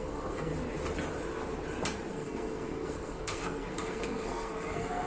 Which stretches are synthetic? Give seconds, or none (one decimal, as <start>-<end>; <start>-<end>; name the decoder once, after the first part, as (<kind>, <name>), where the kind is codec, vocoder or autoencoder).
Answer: 0.0-0.5 (codec, SNAC); 2.1-5.1